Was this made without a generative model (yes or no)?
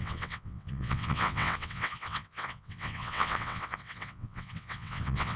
no